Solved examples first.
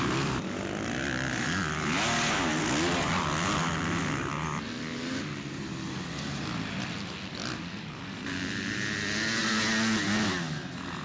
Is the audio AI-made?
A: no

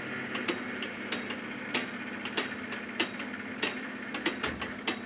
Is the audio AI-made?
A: no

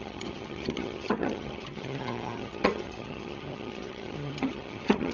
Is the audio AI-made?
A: yes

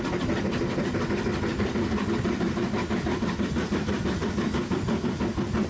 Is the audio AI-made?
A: no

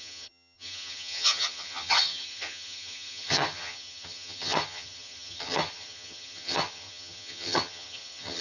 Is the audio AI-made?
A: yes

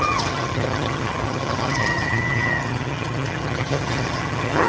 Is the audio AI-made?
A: yes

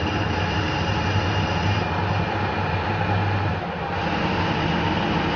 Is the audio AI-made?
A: no